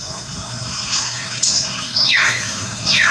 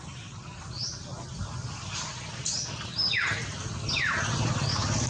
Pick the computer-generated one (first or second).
first